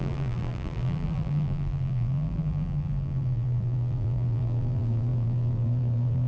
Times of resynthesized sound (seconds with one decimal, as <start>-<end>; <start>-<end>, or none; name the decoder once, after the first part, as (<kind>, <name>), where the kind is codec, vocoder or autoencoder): 0.0-6.3 (vocoder, BigVGAN v2)

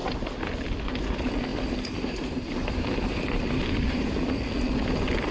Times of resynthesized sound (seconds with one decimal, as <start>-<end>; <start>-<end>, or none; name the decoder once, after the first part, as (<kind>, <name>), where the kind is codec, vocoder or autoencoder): 1.5-4.1 (vocoder, BigVGAN v2)

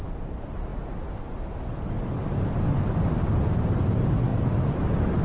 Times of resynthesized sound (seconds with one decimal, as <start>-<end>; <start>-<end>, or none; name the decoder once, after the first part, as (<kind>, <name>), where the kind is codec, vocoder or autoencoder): none